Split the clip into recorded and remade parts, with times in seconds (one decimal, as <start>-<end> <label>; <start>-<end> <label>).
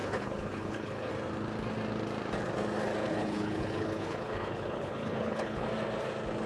0.0-1.1 remade; 1.1-3.0 recorded; 3.0-5.7 remade; 5.7-6.5 recorded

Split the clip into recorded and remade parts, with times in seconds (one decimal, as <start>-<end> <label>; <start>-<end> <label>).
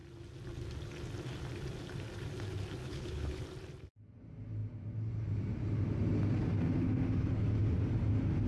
0.0-2.8 recorded; 2.8-3.4 remade; 3.4-8.5 recorded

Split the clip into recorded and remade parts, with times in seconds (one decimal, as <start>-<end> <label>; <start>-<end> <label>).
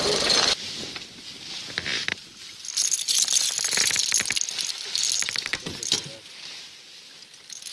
0.0-7.7 recorded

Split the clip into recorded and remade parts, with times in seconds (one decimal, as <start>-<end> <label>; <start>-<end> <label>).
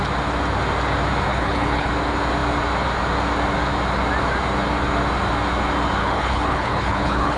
0.0-1.3 recorded; 1.3-1.9 remade; 1.9-6.0 recorded; 6.0-7.4 remade